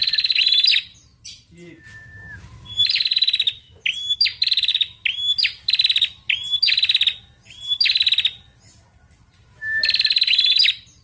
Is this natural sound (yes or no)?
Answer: yes